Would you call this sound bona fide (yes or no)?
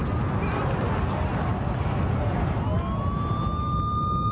yes